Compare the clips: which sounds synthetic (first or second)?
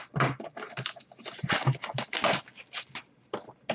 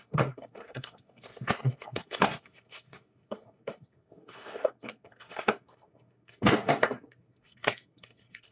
second